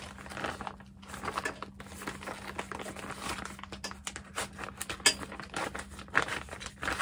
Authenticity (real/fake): real